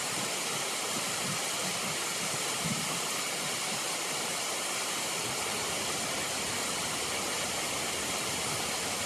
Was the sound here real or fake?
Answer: fake